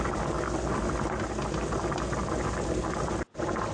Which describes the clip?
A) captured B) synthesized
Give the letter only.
A